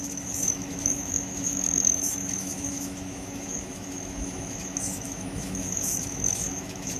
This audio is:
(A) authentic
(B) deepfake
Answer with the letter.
B